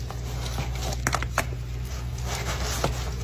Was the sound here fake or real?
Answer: real